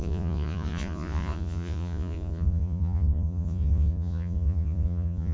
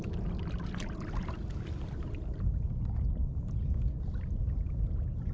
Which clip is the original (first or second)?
second